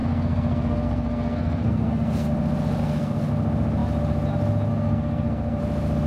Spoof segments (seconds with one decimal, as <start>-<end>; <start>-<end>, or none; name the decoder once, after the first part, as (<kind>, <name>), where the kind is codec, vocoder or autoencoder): 0.0-2.3 (codec, SNAC); 2.8-3.3; 4.7-5.6